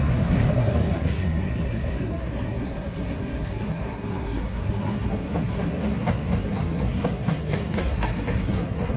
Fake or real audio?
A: fake